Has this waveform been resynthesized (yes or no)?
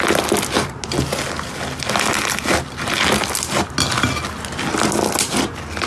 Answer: no